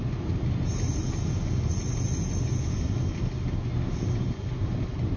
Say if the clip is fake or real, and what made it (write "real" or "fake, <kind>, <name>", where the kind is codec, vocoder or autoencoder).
real